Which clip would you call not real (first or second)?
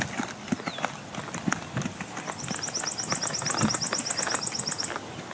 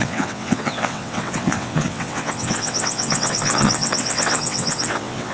second